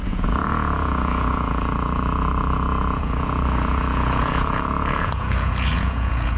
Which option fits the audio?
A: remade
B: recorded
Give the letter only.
A